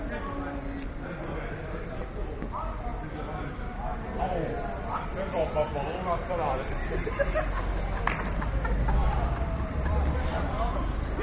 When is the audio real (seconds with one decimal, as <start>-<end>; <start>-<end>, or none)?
0.0-4.3; 7.2-9.0; 10.7-11.2